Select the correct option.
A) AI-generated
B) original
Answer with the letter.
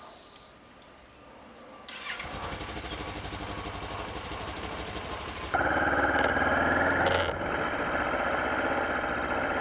B